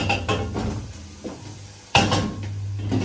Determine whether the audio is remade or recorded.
recorded